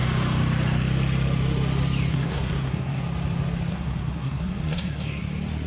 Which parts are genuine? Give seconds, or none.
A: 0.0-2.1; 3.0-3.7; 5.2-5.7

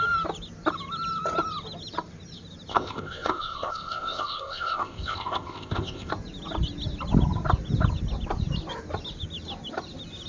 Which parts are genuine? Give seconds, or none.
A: 0.0-2.7; 6.1-10.3